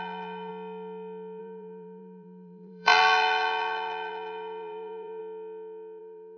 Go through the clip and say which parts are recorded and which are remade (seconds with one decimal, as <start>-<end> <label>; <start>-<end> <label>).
0.0-0.5 remade; 0.5-1.4 recorded; 1.4-5.2 remade; 5.2-6.0 recorded; 6.0-6.4 remade